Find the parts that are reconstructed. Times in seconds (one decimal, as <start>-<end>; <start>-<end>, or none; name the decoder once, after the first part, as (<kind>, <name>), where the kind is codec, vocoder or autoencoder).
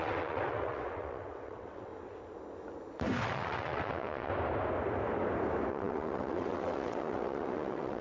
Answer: 0.0-1.9 (vocoder, WaveNeXt); 3.2-4.3; 5.7-8.0